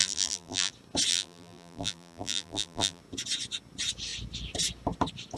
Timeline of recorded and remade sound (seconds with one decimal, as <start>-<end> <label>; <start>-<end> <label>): 0.0-0.7 remade; 0.7-1.1 recorded; 1.1-3.0 remade; 3.0-5.4 recorded